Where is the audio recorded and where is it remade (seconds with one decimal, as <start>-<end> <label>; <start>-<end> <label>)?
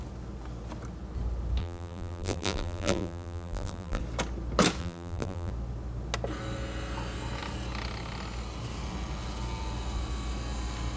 0.0-1.6 recorded; 1.6-4.0 remade; 4.0-4.8 recorded; 4.8-5.5 remade; 5.5-11.0 recorded